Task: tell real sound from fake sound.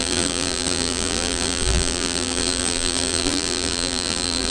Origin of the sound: fake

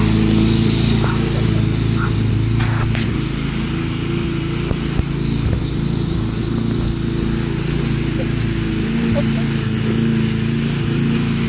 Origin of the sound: real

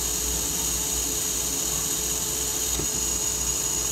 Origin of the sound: real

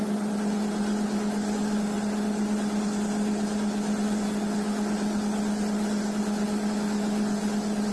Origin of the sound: real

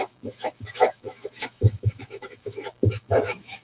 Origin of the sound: fake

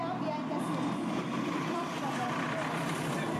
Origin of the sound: fake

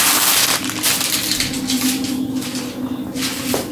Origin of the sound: real